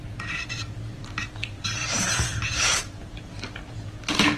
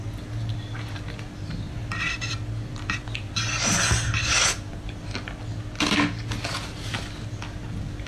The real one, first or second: second